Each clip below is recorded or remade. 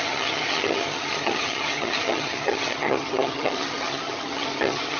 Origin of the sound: remade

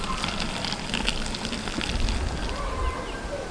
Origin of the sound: recorded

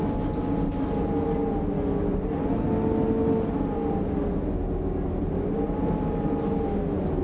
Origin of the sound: recorded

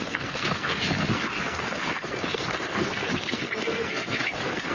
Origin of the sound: remade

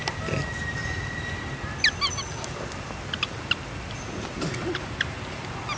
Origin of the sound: recorded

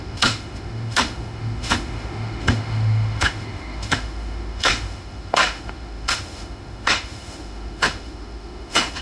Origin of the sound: remade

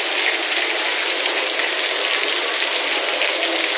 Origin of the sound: recorded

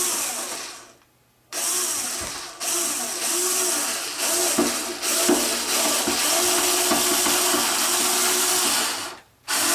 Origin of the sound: recorded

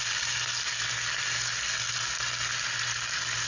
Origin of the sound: recorded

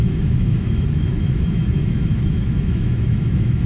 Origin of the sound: remade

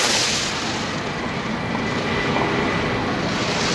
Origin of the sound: recorded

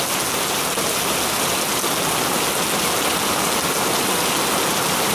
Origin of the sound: recorded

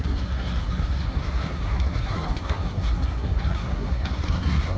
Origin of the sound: remade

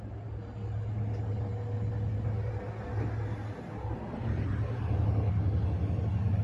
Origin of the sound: recorded